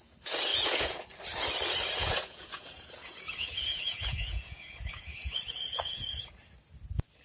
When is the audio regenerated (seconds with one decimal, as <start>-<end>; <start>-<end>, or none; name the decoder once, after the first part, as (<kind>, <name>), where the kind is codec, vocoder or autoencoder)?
0.5-1.0 (vocoder, Vocos); 2.0-6.3

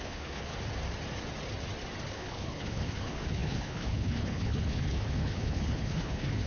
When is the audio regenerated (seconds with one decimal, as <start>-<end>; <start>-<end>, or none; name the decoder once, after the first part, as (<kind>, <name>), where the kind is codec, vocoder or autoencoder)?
0.0-0.5 (codec, HILCodec); 2.1-6.5

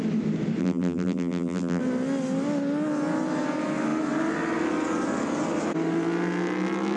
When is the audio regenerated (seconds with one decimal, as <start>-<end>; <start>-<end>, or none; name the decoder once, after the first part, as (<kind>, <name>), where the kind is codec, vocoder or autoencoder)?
0.6-1.8 (vocoder, BigVGAN v2)

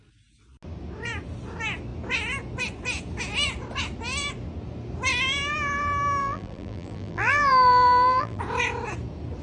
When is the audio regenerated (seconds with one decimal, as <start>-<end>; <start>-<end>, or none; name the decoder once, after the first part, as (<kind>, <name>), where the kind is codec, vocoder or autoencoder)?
6.2-8.4 (vocoder, BigVGAN v2)

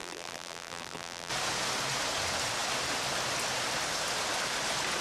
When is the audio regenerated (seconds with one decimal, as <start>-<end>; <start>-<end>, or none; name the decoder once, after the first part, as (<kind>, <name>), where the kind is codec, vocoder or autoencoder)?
0.0-1.3 (vocoder, BigVGAN v2)

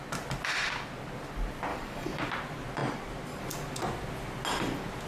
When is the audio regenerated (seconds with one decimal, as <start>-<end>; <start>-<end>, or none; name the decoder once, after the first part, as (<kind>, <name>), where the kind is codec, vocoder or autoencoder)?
1.7-2.2 (codec, DAC)

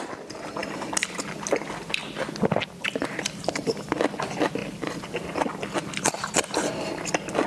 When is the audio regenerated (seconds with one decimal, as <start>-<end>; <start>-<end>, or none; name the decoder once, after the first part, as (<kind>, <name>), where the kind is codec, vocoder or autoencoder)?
none